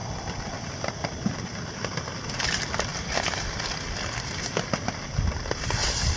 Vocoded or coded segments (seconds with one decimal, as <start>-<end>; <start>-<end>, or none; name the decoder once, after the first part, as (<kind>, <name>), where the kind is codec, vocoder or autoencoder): none